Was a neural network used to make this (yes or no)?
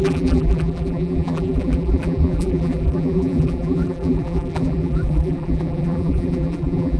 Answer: yes